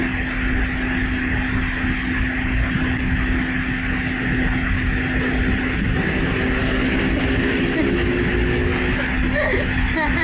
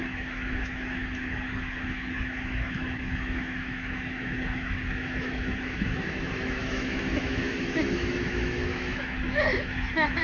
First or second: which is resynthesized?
second